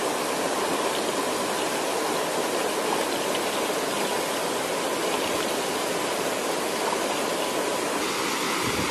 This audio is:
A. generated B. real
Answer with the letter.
B